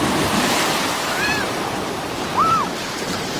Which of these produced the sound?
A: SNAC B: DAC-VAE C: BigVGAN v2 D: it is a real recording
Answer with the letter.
C